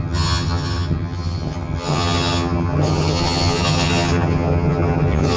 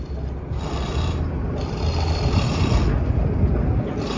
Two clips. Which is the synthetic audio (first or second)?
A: first